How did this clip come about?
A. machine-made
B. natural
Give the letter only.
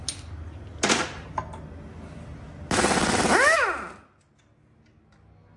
B